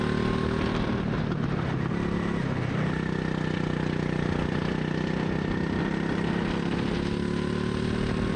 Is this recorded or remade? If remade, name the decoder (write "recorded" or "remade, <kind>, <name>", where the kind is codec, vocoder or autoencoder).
recorded